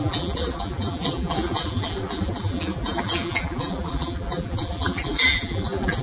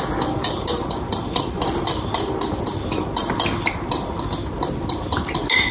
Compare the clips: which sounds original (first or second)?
second